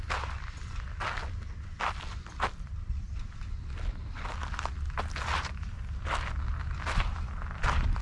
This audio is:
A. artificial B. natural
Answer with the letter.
B